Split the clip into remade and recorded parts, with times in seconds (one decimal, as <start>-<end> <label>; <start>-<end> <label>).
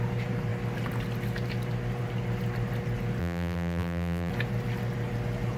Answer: 0.0-3.2 recorded; 3.2-4.3 remade; 4.3-5.6 recorded